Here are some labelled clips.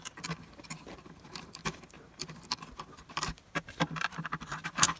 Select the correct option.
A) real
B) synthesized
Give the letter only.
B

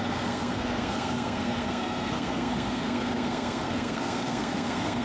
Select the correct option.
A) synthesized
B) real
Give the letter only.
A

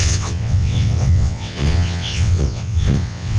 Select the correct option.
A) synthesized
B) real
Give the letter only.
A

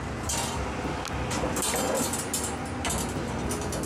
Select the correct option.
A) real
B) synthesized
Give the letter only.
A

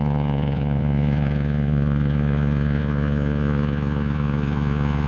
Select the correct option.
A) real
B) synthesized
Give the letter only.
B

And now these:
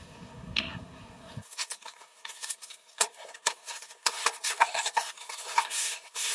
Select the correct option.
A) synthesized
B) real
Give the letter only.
A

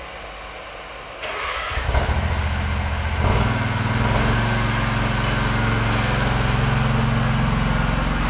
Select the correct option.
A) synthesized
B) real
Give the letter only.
B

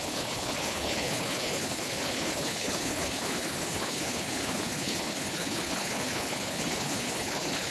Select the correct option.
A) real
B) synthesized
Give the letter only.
B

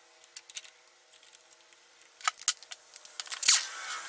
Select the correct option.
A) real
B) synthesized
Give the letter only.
A